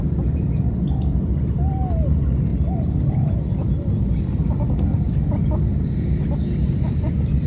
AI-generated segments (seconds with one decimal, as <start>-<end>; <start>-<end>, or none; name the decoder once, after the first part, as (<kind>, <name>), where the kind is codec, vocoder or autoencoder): none